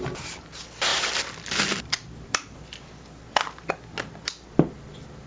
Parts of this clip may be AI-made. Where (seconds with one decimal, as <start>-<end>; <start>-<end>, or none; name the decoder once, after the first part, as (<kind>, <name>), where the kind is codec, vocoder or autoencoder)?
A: none